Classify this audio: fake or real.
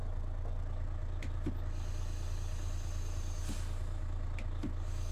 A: real